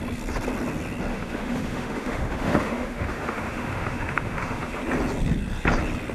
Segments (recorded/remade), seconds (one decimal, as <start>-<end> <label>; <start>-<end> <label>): 0.0-1.1 recorded; 1.1-4.8 remade; 4.8-6.1 recorded